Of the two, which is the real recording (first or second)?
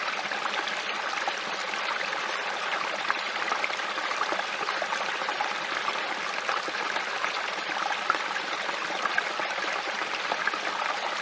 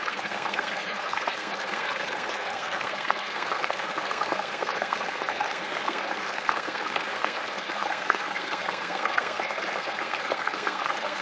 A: first